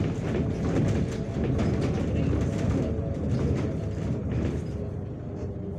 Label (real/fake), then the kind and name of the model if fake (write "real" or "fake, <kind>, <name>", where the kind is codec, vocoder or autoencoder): real